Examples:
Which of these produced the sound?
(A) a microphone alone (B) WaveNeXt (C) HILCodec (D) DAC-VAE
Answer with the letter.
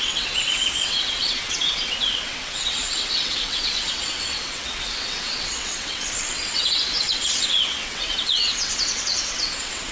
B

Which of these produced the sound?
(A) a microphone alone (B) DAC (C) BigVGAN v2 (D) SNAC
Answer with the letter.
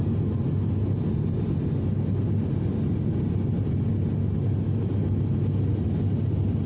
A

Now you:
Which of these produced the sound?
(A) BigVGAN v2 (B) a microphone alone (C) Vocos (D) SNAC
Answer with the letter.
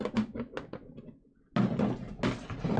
B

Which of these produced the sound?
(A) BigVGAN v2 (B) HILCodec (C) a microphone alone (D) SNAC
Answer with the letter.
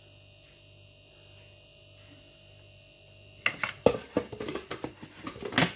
C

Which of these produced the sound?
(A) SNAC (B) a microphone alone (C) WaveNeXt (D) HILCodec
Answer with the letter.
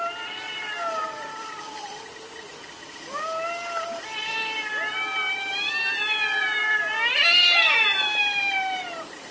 B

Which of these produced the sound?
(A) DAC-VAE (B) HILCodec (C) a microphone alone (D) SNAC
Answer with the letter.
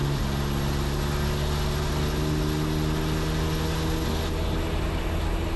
C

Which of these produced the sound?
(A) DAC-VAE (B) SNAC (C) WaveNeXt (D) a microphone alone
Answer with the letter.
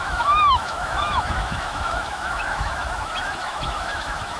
A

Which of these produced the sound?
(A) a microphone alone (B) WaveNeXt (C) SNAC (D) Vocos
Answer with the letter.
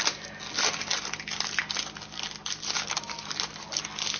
A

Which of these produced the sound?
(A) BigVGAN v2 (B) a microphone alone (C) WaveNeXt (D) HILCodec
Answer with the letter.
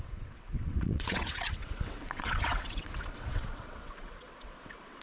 C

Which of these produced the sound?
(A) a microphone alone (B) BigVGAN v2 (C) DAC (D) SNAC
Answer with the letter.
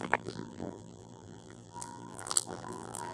B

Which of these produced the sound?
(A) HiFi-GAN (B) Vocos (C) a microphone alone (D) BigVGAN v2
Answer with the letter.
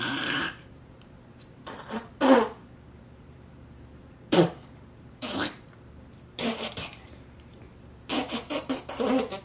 D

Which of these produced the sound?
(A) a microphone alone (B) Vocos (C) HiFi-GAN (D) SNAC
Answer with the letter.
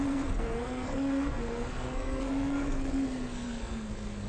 D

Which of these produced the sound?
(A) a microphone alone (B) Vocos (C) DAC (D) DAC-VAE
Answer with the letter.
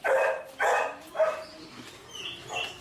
A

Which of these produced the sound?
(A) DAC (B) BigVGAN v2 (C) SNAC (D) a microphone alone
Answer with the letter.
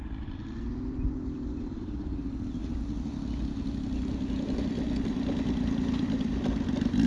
B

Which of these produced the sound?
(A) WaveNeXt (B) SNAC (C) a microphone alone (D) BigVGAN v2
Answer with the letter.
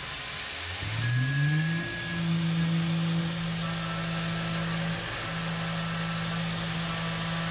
C